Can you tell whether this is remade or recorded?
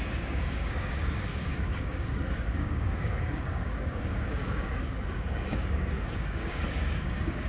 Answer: remade